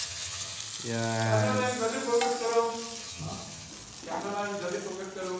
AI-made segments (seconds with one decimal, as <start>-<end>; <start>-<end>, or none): 0.0-0.6; 3.0-3.7